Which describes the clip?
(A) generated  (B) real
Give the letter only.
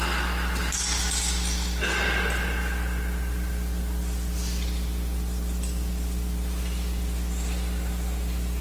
B